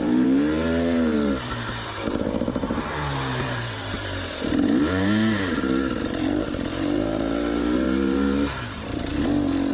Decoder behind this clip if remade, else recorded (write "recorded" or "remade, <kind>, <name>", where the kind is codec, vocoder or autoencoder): remade, vocoder, BigVGAN v2